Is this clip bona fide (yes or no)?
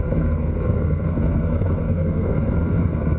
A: no